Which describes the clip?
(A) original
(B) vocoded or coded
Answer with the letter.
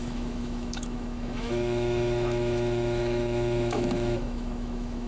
B